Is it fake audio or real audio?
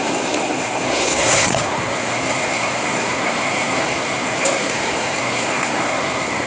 fake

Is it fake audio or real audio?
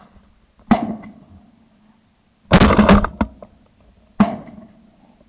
real